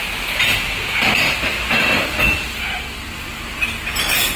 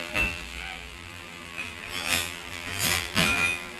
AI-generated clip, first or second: second